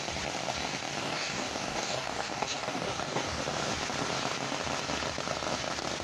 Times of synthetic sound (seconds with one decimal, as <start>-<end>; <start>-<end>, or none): 1.0-3.4